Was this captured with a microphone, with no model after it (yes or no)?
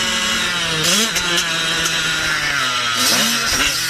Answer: yes